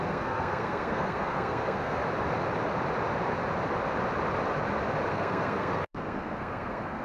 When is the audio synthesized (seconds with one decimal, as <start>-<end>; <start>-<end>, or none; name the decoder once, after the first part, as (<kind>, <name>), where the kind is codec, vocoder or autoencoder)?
0.0-2.0 (codec, SNAC); 5.1-7.0